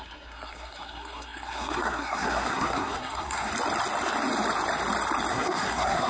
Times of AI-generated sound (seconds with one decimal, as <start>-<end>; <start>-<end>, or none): 0.0-3.5; 5.3-6.1